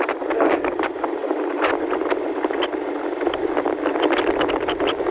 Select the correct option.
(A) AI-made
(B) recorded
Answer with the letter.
B